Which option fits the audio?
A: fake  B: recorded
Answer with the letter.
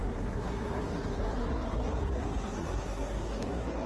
A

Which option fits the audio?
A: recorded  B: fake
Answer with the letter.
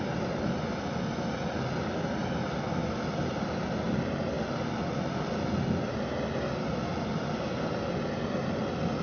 A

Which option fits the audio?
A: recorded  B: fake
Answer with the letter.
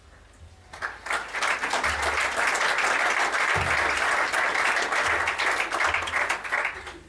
A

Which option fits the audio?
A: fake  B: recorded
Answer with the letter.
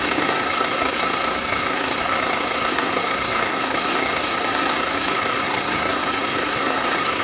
A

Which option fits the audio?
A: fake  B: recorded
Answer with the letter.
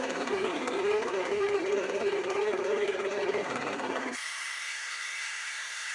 A